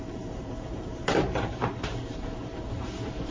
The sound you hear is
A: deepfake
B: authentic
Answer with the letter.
A